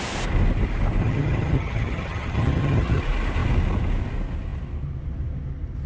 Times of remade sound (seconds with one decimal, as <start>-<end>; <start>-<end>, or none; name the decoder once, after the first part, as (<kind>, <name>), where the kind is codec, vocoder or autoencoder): 1.0-3.0 (vocoder, HiFi-GAN)